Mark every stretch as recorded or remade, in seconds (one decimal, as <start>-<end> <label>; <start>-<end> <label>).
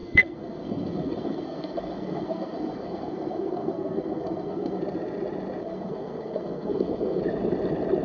0.0-4.8 remade; 4.8-5.6 recorded; 5.6-7.2 remade; 7.2-8.0 recorded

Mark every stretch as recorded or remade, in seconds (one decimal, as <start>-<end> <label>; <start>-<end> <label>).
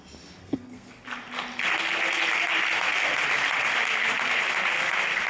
0.0-0.4 recorded; 0.4-0.9 remade; 0.9-5.3 recorded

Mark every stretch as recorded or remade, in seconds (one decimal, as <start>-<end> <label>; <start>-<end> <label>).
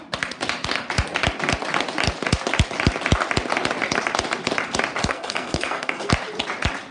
0.0-5.0 recorded; 5.0-6.1 remade; 6.1-6.9 recorded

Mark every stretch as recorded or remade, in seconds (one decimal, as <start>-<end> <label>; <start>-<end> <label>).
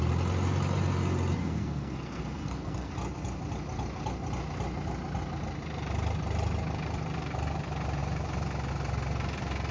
0.0-1.4 recorded; 1.4-2.9 remade; 2.9-9.7 recorded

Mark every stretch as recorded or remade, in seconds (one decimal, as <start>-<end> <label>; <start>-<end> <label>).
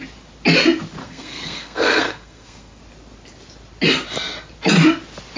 0.0-1.0 recorded; 1.0-2.8 remade; 2.8-5.4 recorded